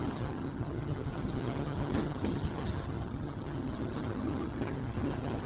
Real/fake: fake